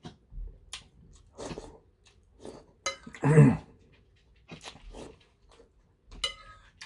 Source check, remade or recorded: recorded